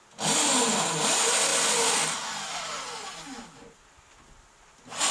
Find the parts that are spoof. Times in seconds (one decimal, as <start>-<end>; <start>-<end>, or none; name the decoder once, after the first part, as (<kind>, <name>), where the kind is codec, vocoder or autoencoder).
none